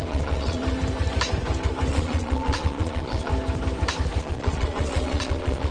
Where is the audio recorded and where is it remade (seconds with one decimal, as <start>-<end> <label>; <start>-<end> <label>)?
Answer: 0.0-0.6 remade; 0.6-1.9 recorded; 1.9-3.3 remade; 3.3-4.2 recorded; 4.2-5.7 remade